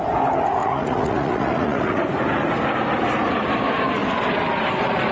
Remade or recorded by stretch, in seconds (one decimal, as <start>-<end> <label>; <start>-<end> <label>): 0.0-0.6 recorded; 0.6-2.0 remade; 2.0-5.1 recorded